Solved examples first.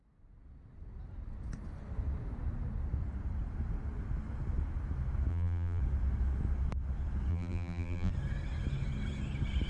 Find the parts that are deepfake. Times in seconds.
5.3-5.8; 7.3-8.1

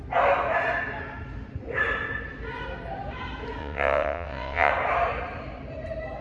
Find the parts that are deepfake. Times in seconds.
3.6-4.7

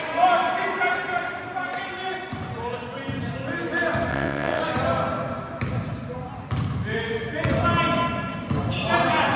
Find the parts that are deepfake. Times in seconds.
4.1-4.6